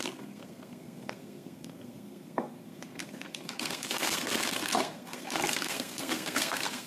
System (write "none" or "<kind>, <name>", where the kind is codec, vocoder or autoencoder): codec, SNAC